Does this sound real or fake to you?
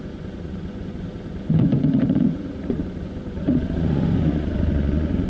fake